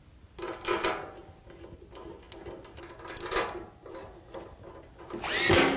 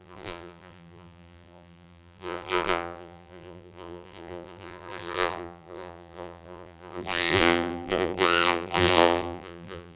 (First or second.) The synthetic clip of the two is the second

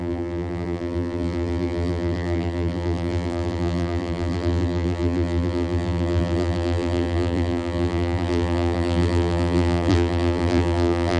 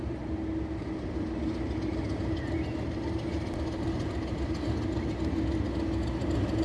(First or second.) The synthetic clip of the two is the first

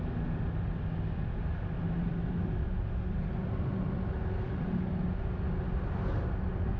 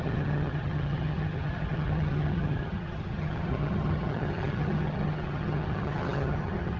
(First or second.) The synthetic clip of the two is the second